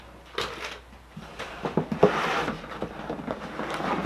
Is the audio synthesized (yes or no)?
no